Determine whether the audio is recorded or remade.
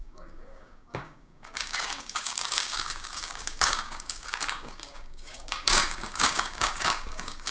remade